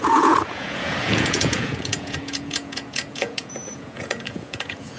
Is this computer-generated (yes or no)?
yes